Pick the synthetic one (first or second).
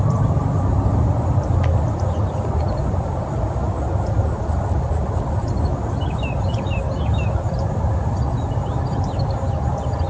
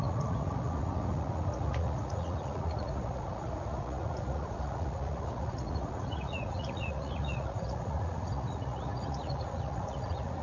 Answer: second